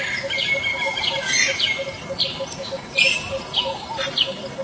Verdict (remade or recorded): recorded